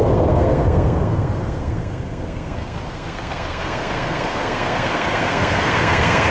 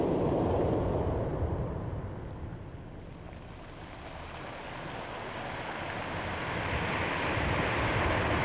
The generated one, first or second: first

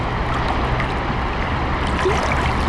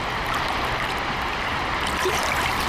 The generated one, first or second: second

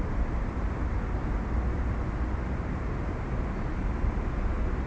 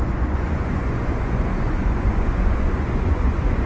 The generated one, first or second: second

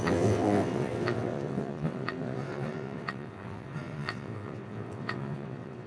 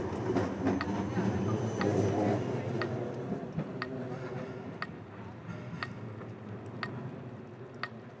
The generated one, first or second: first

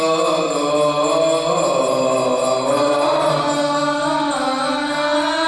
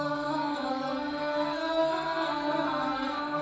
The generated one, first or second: second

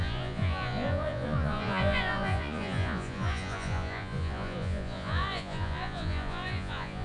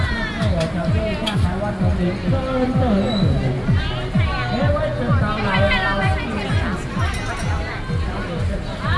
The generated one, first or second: first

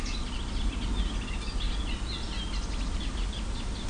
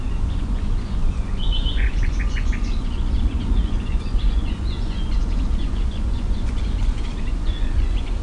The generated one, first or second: second